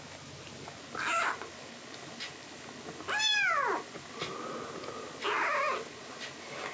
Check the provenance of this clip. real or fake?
real